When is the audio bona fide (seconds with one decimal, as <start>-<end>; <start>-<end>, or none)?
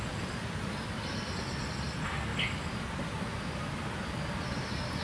0.0-5.0